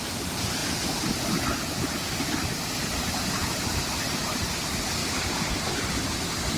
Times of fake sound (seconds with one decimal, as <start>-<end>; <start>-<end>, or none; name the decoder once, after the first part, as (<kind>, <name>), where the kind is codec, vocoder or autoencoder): 0.0-0.6 (vocoder, BigVGAN v2); 2.9-6.6